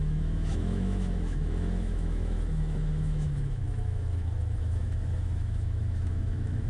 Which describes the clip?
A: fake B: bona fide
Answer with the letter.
A